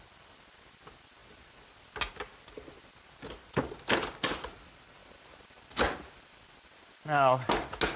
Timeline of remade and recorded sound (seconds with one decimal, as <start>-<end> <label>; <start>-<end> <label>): 0.0-5.0 recorded; 5.0-7.5 remade; 7.5-8.0 recorded